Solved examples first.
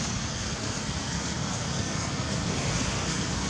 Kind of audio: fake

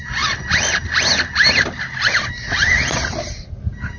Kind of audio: real